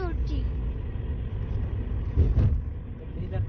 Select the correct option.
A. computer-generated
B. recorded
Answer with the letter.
B